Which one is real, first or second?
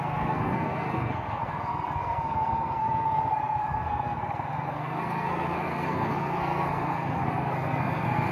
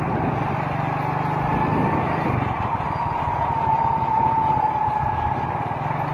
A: second